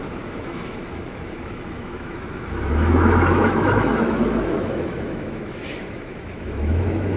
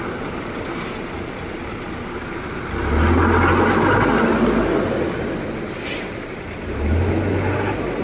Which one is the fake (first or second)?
first